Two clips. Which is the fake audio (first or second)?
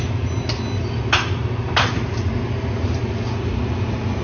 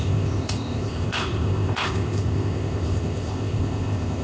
second